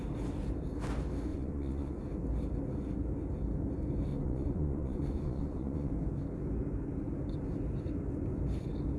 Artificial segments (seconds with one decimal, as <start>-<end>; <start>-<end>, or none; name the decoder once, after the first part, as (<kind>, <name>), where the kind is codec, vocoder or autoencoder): 1.3-1.9 (vocoder, Vocos); 4.1-5.9